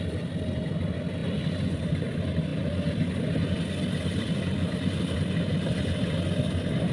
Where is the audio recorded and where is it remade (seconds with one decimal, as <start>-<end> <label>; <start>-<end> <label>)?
0.0-2.5 recorded; 2.5-5.5 remade; 5.5-6.9 recorded

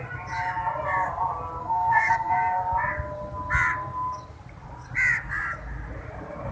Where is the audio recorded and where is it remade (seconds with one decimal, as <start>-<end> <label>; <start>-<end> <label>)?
0.0-1.6 recorded; 1.6-2.6 remade; 2.6-6.5 recorded

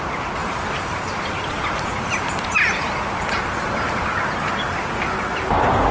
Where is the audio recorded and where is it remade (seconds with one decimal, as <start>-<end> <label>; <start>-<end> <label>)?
0.0-5.9 recorded

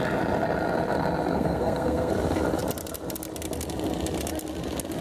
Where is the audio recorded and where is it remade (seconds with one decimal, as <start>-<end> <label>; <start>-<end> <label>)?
0.0-1.3 recorded; 1.3-2.1 remade; 2.1-5.0 recorded

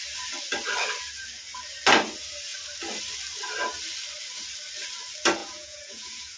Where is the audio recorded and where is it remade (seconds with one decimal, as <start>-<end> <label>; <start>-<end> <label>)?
0.0-5.4 recorded; 5.4-6.4 remade